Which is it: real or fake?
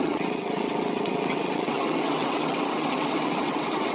fake